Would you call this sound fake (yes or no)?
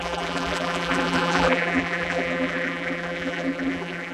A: yes